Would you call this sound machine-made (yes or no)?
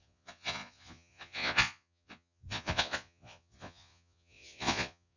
yes